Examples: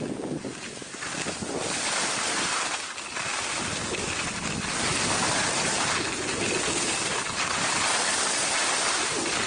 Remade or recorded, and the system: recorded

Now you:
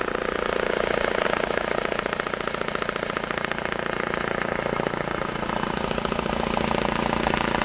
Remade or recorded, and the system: recorded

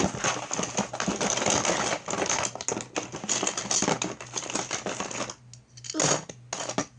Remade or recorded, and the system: recorded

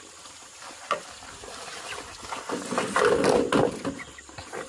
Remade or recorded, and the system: recorded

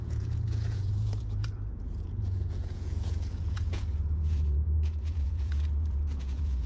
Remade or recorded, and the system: remade, vocoder, Vocos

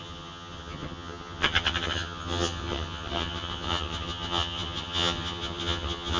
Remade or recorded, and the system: remade, vocoder, HiFi-GAN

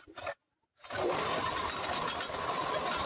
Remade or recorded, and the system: recorded